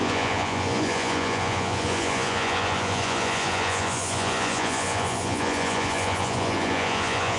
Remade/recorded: remade